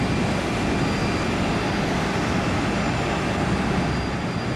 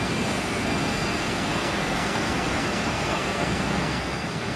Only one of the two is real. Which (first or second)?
first